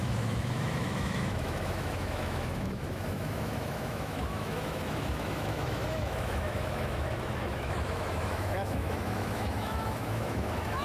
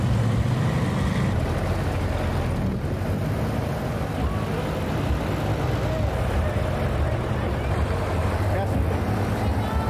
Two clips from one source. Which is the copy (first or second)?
first